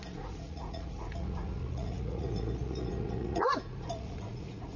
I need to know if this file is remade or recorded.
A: remade